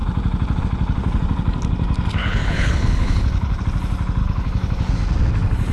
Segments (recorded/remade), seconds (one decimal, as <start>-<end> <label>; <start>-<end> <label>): 0.0-2.2 recorded; 2.2-3.6 remade; 3.6-4.2 recorded; 4.2-4.9 remade; 4.9-5.7 recorded